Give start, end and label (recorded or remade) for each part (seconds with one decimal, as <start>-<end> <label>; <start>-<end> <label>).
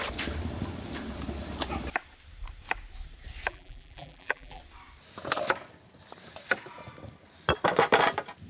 0.0-3.5 recorded; 3.5-4.6 remade; 4.6-8.5 recorded